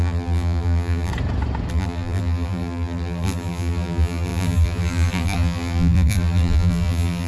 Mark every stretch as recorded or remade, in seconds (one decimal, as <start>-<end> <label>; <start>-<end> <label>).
0.0-1.1 remade; 1.1-1.7 recorded; 1.7-7.3 remade